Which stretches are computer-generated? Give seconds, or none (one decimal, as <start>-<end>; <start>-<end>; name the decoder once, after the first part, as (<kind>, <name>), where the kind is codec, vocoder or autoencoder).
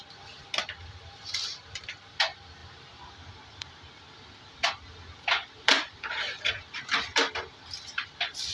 none